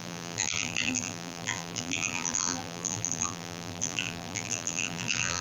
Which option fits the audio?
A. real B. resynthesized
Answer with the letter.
B